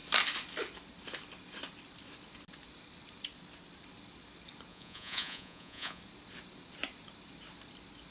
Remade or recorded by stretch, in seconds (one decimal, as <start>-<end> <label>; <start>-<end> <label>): 0.0-4.7 recorded; 4.7-6.0 remade; 6.0-8.1 recorded